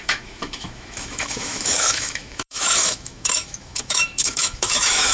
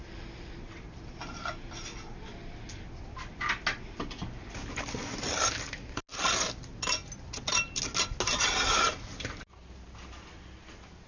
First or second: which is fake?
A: first